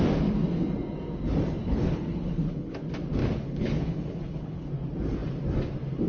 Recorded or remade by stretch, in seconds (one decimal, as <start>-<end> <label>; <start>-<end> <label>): 0.0-1.6 recorded; 1.6-2.8 remade; 2.8-3.2 recorded; 3.2-4.7 remade; 4.7-6.1 recorded